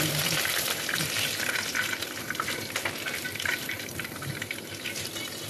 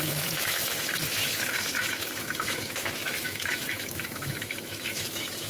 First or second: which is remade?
second